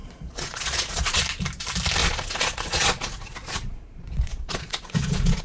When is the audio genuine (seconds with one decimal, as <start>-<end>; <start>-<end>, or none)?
1.2-2.0